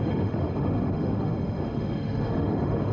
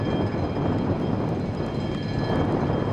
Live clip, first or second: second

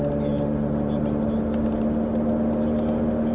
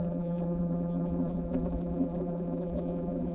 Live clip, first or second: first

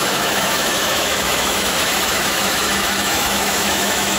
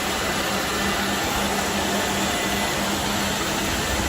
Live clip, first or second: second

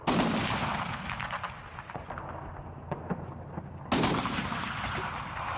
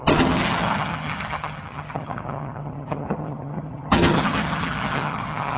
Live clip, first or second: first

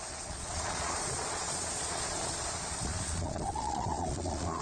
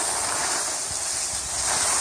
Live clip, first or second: second